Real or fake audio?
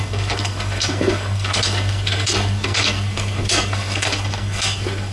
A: fake